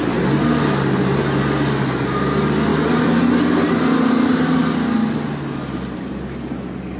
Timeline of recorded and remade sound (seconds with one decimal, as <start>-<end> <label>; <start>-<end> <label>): 0.0-7.0 recorded